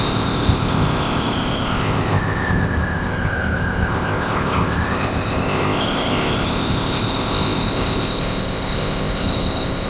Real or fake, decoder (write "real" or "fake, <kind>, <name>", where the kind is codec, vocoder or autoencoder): fake, codec, ZipCodec